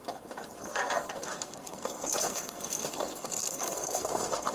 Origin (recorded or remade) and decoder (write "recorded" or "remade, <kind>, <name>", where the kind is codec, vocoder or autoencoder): remade, codec, SNAC